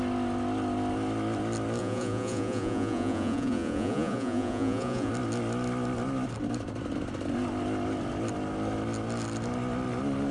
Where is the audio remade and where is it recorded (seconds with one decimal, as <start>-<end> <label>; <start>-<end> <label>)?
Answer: 0.0-1.8 recorded; 1.8-5.1 remade; 5.1-10.3 recorded